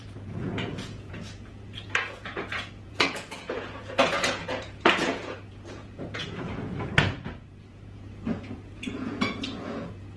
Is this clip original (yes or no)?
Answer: no